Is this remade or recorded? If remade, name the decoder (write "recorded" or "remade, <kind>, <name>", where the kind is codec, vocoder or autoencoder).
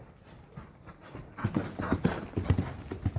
recorded